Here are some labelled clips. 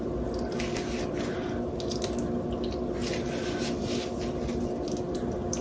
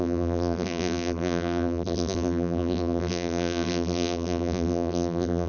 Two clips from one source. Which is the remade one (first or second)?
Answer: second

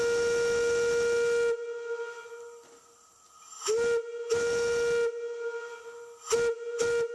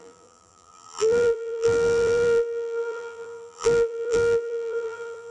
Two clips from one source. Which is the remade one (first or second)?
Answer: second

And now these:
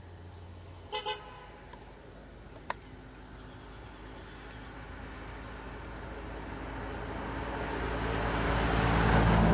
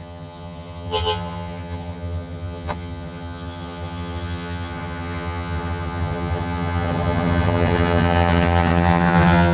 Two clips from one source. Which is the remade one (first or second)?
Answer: second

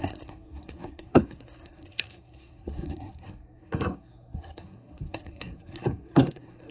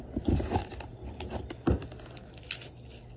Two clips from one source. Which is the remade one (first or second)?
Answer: first